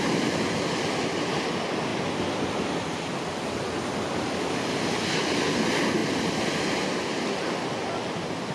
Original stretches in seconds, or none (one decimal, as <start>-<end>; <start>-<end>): 0.0-8.5